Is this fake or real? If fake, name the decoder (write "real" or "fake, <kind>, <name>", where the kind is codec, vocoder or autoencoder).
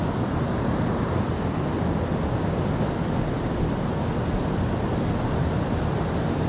real